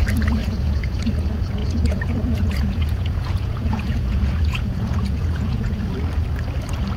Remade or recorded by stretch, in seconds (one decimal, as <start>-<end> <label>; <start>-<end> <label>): 0.0-0.4 recorded; 0.4-1.0 remade; 1.0-1.6 recorded; 1.6-5.8 remade; 5.8-7.0 recorded